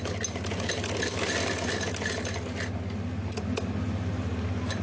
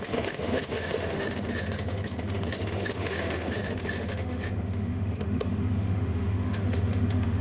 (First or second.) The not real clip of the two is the second